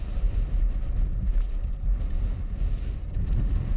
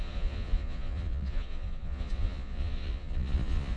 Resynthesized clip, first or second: second